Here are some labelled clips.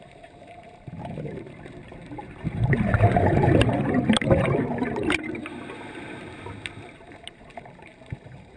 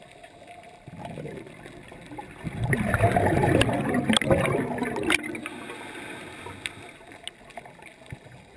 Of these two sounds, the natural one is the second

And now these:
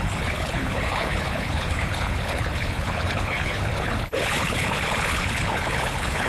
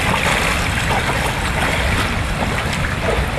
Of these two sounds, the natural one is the second